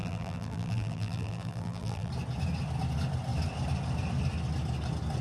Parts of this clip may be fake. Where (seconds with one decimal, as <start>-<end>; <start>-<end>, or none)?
0.0-2.1